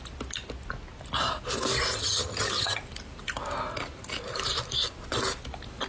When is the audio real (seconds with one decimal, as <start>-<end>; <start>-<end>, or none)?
0.0-2.0; 2.8-5.9